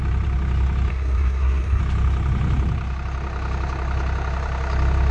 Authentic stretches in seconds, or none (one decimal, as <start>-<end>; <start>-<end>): 0.0-0.9; 1.8-5.1